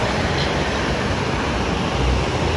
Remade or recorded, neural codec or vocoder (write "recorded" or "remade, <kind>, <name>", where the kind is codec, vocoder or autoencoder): recorded